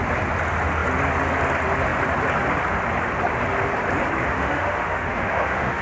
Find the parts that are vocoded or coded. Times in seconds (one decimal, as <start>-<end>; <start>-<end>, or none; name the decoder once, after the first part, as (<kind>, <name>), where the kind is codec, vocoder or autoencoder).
4.2-5.8 (autoencoder, DAC-VAE)